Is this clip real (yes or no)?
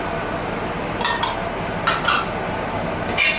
yes